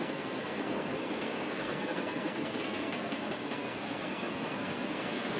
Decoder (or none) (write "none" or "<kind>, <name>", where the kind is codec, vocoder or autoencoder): codec, SNAC